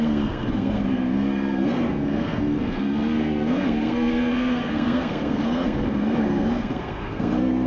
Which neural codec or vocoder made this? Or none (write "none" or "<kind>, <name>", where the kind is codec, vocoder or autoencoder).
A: codec, SNAC